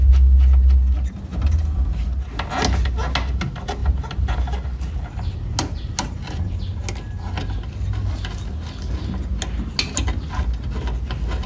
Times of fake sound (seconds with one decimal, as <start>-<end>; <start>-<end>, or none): 1.3-2.1